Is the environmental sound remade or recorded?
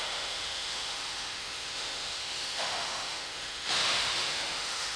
remade